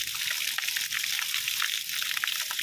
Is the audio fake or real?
real